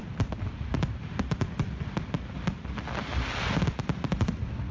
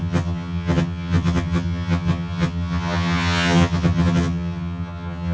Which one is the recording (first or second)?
first